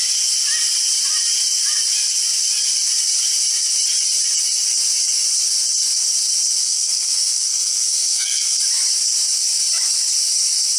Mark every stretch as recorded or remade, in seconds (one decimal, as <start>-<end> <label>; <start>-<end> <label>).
0.0-6.6 recorded; 6.6-8.6 remade; 8.6-10.8 recorded